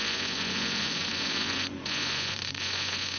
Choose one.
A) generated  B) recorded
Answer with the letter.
A